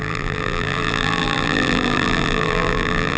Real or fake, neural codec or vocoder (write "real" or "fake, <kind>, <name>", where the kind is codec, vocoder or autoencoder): fake, vocoder, BigVGAN v2